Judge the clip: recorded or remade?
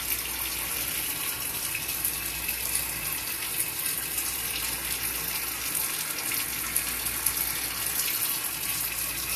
recorded